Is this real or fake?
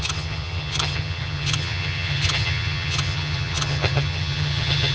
fake